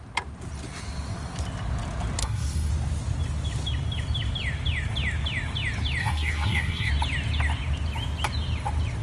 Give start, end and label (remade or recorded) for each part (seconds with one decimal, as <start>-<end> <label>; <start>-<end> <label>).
0.0-2.2 recorded; 2.2-2.7 remade; 2.7-6.0 recorded; 6.0-6.9 remade; 6.9-9.0 recorded